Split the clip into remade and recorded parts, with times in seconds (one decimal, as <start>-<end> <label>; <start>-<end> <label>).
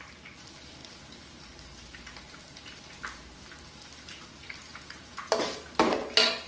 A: 0.0-4.7 recorded; 4.7-5.3 remade; 5.3-6.5 recorded